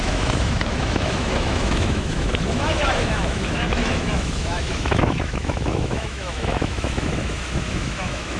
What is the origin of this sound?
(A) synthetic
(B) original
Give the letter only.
A